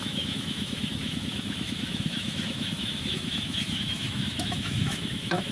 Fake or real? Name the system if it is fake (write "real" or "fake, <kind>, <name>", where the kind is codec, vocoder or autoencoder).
fake, autoencoder, DAC-VAE